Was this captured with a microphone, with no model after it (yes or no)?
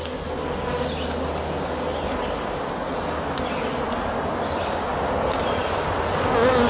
yes